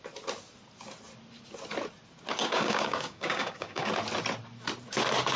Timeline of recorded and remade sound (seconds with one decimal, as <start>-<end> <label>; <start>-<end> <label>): 0.0-2.4 recorded; 2.4-3.9 remade; 3.9-5.4 recorded